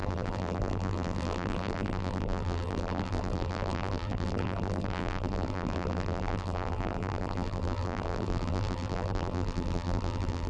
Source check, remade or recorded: remade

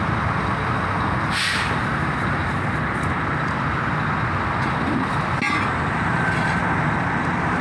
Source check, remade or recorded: recorded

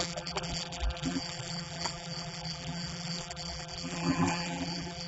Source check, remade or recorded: remade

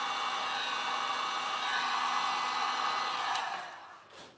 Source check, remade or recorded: recorded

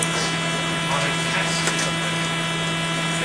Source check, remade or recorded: recorded